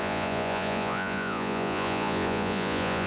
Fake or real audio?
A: fake